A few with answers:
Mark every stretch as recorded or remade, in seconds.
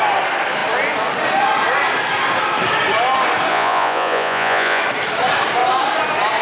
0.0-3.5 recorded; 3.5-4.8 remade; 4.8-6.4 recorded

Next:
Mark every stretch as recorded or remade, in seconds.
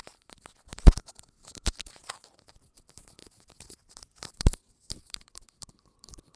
0.0-2.0 remade; 2.0-2.7 recorded; 2.7-6.4 remade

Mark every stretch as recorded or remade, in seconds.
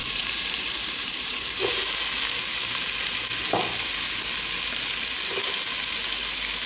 0.0-1.7 remade; 1.7-6.7 recorded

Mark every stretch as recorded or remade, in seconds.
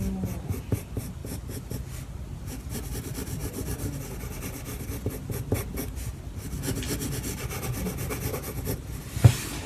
0.0-9.7 recorded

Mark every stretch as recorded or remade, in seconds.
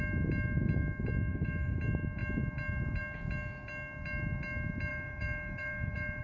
0.0-1.3 recorded; 1.3-1.8 remade; 1.8-4.9 recorded; 4.9-6.2 remade